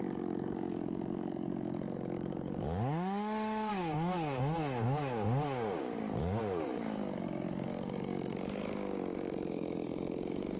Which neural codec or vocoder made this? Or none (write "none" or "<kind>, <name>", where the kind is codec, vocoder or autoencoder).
codec, DAC